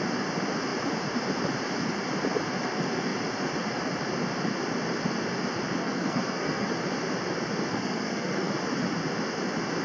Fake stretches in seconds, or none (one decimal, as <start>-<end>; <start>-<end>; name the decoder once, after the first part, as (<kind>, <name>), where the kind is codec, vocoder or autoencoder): 5.8-6.7 (codec, SNAC); 7.7-8.5